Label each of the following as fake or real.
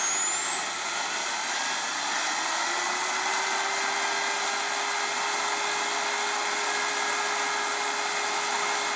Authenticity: real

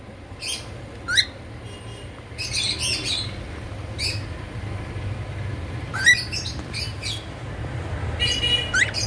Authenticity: real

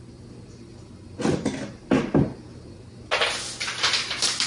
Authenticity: real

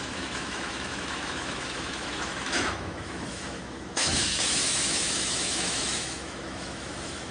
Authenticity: fake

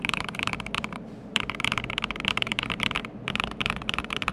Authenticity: fake